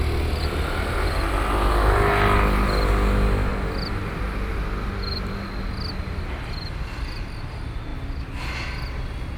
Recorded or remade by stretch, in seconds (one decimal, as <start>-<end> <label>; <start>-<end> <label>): 0.0-9.4 recorded